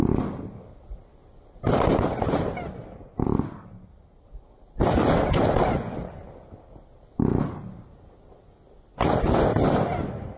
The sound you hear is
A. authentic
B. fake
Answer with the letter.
A